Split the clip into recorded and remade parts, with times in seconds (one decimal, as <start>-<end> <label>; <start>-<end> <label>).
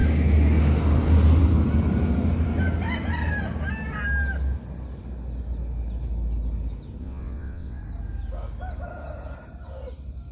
0.0-7.0 recorded; 7.0-7.8 remade; 7.8-10.3 recorded